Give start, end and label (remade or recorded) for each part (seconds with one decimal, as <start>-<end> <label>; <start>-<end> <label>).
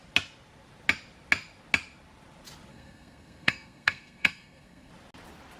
0.0-2.7 recorded; 2.7-4.9 remade; 4.9-5.6 recorded